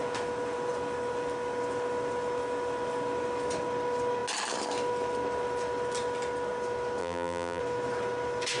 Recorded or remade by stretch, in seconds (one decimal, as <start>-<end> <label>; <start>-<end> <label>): 0.0-7.0 recorded; 7.0-7.6 remade; 7.6-8.6 recorded